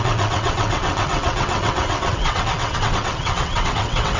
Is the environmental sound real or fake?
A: fake